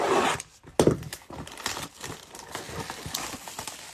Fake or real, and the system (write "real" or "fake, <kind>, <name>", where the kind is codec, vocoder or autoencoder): real